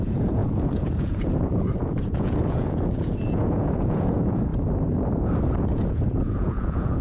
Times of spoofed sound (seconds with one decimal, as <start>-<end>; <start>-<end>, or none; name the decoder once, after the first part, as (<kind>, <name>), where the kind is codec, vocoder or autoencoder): 0.0-4.5 (vocoder, Vocos); 5.9-7.0